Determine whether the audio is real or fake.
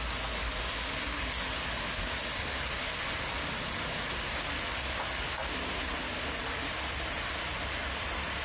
real